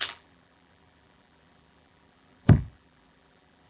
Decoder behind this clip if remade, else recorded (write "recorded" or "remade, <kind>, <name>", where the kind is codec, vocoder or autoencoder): remade, vocoder, BigVGAN v2